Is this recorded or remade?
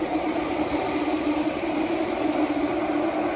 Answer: remade